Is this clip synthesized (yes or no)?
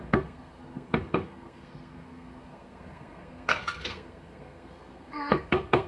yes